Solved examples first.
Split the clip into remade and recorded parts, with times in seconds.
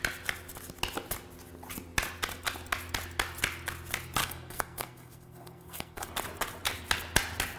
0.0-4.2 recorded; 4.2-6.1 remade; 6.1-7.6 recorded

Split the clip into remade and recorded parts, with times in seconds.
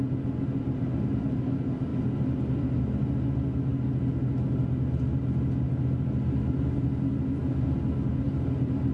0.0-8.9 recorded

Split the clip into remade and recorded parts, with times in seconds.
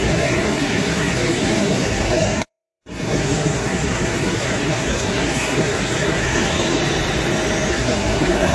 0.0-6.8 remade; 6.8-7.7 recorded; 7.7-8.5 remade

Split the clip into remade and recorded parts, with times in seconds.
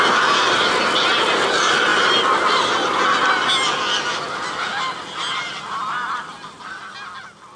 0.0-7.6 recorded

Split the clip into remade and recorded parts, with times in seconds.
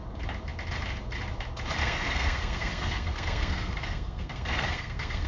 0.0-1.8 recorded; 1.8-5.3 remade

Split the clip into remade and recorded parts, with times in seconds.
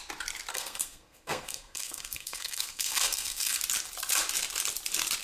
0.0-0.5 recorded; 0.5-3.6 remade; 3.6-5.2 recorded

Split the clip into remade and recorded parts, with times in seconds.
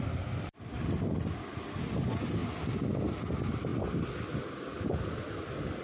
0.0-5.8 recorded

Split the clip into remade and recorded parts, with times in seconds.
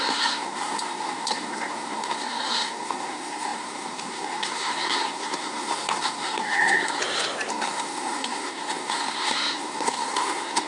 0.0-7.0 remade; 7.0-7.5 recorded; 7.5-10.7 remade